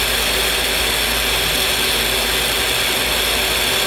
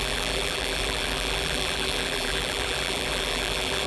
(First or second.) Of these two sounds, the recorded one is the first